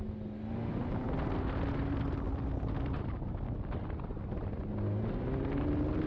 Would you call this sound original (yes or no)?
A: yes